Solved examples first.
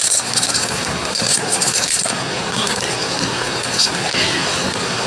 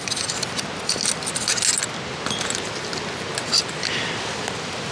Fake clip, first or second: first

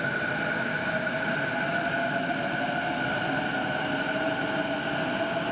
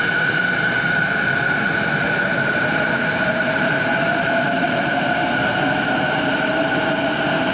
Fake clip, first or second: second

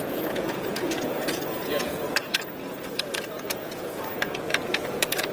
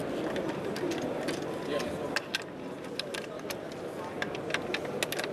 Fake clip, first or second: first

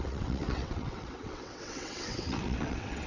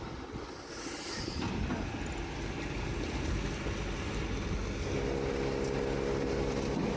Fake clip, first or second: first